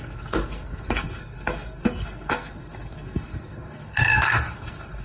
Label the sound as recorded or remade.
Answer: remade